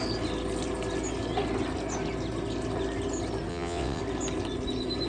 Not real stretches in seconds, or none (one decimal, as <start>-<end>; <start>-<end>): 3.5-4.0